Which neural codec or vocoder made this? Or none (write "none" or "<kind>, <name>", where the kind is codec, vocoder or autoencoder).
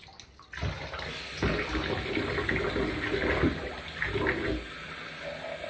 none